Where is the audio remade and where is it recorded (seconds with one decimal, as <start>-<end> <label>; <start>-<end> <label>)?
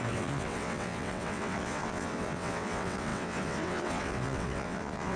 0.0-5.2 remade